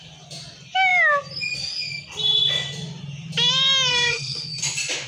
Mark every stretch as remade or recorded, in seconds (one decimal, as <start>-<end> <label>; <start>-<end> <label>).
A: 0.0-3.9 recorded; 3.9-4.6 remade; 4.6-5.1 recorded